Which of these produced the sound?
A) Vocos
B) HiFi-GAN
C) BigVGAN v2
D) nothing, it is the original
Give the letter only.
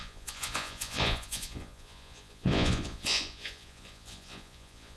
A